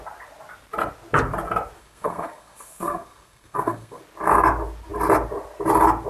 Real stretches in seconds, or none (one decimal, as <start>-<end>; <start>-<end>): 0.0-1.8; 4.0-6.1